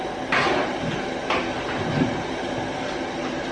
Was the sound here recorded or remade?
remade